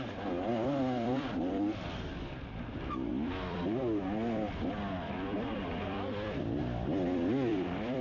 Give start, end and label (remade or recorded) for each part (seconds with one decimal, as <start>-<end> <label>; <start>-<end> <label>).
0.0-0.5 recorded; 0.5-2.3 remade; 2.3-3.1 recorded; 3.1-8.0 remade